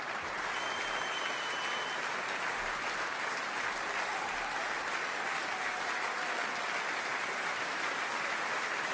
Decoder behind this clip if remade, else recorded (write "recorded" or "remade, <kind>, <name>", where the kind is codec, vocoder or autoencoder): recorded